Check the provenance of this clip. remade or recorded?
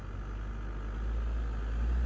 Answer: recorded